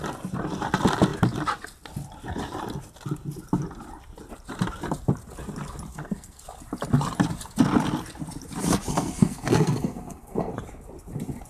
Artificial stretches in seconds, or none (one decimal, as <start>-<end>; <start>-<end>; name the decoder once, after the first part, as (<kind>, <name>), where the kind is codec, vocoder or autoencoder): 5.9-6.4 (codec, SNAC); 8.9-10.5